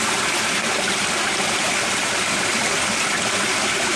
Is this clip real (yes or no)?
yes